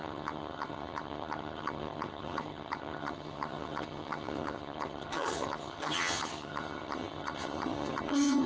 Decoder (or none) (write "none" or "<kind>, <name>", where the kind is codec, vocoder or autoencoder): vocoder, HiFi-GAN